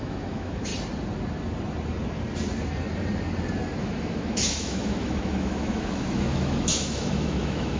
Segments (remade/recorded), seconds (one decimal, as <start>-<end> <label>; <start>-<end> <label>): 0.0-0.7 remade; 0.7-3.8 recorded; 3.8-7.8 remade